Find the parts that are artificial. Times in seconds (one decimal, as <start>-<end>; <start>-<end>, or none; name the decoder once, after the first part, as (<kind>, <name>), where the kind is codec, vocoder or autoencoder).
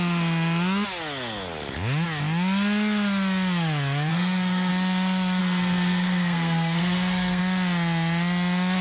4.1-4.7 (codec, SNAC); 5.4-7.4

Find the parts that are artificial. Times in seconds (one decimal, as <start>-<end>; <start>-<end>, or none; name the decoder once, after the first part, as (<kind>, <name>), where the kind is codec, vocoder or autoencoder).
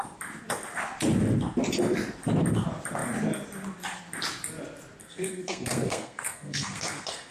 5.0-7.3 (codec, SNAC)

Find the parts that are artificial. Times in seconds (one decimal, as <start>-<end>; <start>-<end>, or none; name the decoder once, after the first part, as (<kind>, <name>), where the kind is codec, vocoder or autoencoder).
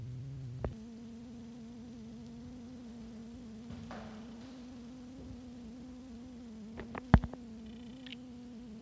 none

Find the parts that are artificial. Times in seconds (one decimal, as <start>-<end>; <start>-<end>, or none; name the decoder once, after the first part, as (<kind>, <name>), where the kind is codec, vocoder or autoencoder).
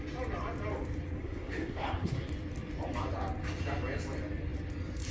1.2-2.3 (codec, SNAC)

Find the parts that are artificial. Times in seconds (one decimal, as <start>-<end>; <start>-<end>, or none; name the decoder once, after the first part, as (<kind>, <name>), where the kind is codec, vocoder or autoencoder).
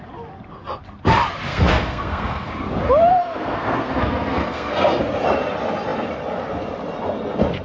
1.5-2.5 (codec, SNAC); 3.1-5.0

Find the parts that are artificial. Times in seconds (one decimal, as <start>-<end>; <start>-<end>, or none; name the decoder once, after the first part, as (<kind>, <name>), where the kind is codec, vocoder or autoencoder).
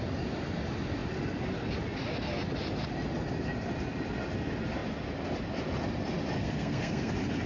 6.4-7.1 (codec, SNAC)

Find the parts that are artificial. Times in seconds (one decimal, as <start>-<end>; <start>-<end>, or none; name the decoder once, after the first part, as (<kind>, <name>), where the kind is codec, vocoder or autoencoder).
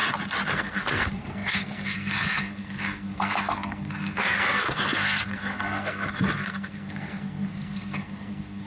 0.5-8.7 (codec, SNAC)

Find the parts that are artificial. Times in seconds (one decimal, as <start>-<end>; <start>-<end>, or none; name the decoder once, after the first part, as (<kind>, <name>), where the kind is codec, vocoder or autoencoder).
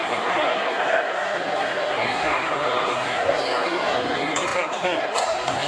0.0-5.7 (codec, SNAC)